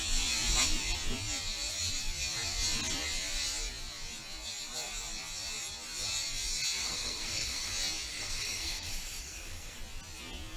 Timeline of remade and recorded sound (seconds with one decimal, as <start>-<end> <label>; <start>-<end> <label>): 0.0-6.8 recorded; 6.8-7.7 remade; 7.7-8.1 recorded; 8.1-9.8 remade; 9.8-10.6 recorded